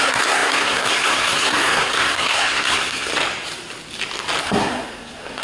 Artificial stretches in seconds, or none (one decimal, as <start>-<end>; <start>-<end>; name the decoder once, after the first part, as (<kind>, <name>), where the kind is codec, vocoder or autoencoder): 0.0-3.1 (codec, SNAC); 4.4-5.4